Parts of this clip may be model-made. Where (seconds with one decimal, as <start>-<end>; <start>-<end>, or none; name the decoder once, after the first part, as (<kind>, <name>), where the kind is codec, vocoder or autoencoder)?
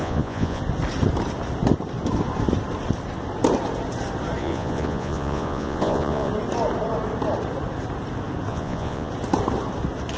0.0-0.6 (vocoder, Vocos); 4.4-6.3; 8.5-9.1